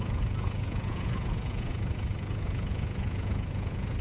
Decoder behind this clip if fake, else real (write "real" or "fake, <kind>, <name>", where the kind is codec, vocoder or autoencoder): fake, vocoder, Vocos